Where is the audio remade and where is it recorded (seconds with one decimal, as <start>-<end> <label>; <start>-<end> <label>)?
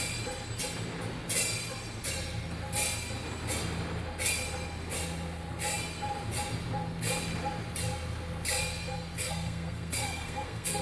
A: 0.0-9.2 recorded; 9.2-10.8 remade